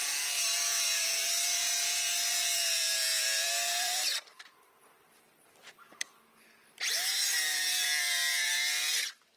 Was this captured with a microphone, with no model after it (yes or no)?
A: no